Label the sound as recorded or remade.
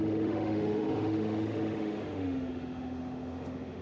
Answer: remade